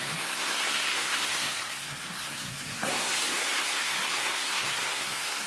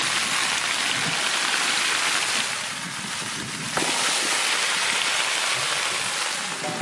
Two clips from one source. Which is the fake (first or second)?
first